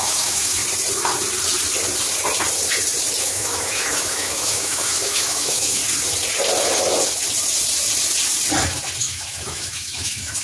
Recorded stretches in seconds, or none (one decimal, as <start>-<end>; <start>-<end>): 0.6-3.2; 5.8-9.0